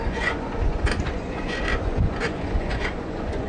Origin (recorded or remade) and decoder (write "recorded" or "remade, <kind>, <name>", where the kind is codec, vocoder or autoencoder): remade, vocoder, Vocos